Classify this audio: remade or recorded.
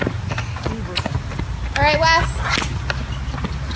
recorded